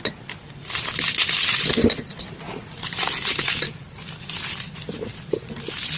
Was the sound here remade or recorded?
recorded